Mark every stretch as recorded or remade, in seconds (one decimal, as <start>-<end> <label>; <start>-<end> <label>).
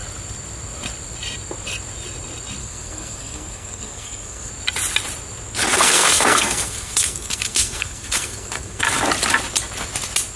0.0-2.6 recorded; 2.6-4.5 remade; 4.5-5.6 recorded; 5.6-8.9 remade; 8.9-10.4 recorded